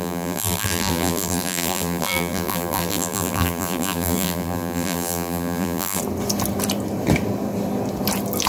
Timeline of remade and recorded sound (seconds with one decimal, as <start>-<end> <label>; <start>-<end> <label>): 0.0-6.0 remade; 6.0-8.5 recorded